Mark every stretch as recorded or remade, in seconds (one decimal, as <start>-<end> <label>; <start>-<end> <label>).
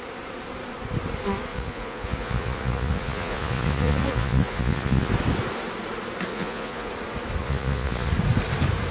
0.0-1.5 recorded; 1.5-5.1 remade; 5.1-6.3 recorded; 6.3-6.9 remade; 6.9-7.4 recorded; 7.4-8.1 remade; 8.1-8.9 recorded